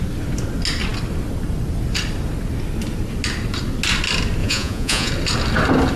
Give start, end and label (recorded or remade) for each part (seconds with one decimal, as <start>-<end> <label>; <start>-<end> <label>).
0.0-4.4 recorded; 4.4-5.1 remade; 5.1-6.0 recorded